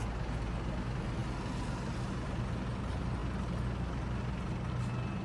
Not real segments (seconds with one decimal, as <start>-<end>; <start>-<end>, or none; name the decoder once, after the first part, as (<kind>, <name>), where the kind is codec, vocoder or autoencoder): none